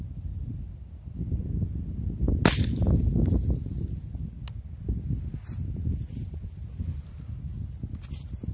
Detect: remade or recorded recorded